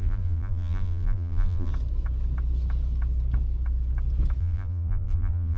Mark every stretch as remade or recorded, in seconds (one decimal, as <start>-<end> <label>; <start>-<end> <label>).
0.0-1.7 remade; 1.7-4.4 recorded; 4.4-5.6 remade